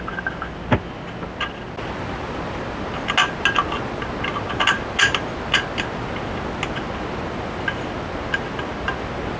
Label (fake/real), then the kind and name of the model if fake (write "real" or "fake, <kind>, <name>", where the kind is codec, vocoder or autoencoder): real